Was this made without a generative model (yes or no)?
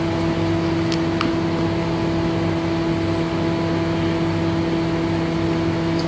yes